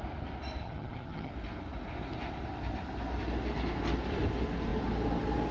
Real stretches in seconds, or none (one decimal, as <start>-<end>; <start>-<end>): 0.0-0.6; 1.3-5.5